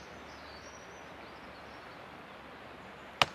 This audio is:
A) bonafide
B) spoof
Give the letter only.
A